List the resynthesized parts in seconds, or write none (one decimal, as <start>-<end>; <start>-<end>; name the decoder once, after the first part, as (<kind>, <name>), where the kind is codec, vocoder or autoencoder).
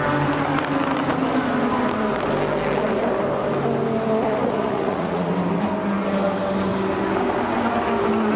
4.4-5.3 (vocoder, Vocos)